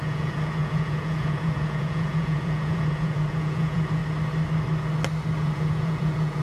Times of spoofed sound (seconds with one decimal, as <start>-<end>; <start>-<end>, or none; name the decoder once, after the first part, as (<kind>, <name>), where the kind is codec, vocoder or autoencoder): 0.0-4.0 (vocoder, Vocos); 5.4-6.4